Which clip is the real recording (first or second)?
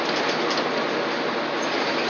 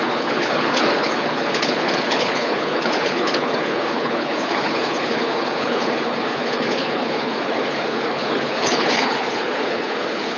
first